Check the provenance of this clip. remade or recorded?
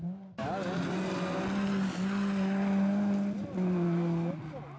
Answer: recorded